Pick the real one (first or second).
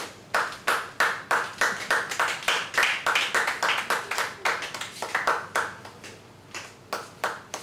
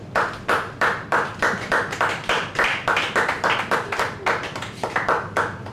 first